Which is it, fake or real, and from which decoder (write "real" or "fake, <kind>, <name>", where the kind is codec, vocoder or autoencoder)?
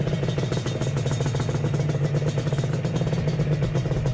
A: real